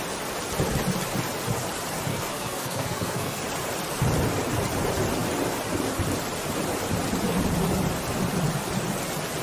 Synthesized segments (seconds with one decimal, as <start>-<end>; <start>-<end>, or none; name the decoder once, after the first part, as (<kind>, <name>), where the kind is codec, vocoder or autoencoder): 2.1-3.4 (codec, SNAC)